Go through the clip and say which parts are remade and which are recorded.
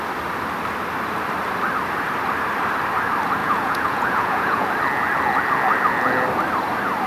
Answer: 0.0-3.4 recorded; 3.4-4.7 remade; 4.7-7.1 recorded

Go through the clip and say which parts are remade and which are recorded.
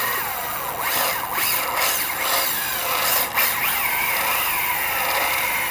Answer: 0.0-5.7 recorded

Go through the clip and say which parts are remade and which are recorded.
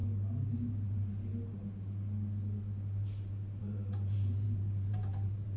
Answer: 0.0-0.5 recorded; 0.5-1.3 remade; 1.3-3.6 recorded; 3.6-5.6 remade